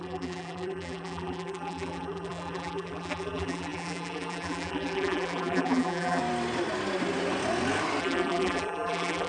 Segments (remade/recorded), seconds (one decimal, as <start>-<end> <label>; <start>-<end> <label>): 0.0-6.2 remade; 6.2-8.0 recorded; 8.0-9.3 remade